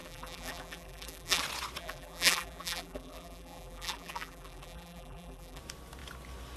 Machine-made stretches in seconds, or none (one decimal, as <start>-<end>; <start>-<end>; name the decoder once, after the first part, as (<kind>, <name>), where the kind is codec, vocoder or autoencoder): 0.0-1.4 (vocoder, BigVGAN v2); 1.8-5.6